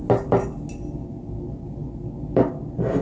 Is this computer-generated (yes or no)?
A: no